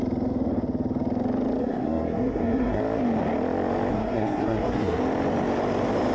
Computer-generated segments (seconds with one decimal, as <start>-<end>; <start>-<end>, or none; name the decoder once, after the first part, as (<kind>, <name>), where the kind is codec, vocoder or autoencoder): 1.6-2.8 (codec, SNAC); 3.9-5.0